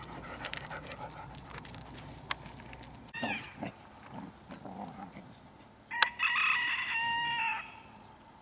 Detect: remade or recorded recorded